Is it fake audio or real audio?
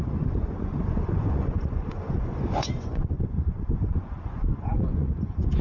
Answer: fake